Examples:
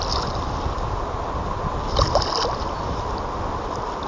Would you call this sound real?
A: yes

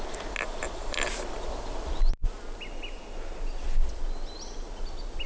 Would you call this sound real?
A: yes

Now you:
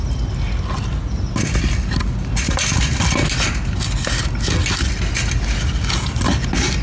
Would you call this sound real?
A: yes